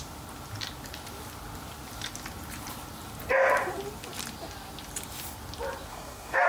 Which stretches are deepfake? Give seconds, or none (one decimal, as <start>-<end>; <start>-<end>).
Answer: 5.9-6.5